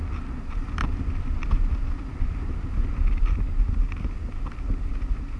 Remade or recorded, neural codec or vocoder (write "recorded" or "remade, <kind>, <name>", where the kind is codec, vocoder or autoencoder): recorded